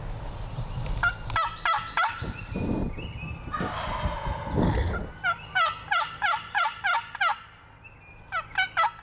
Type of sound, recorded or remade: recorded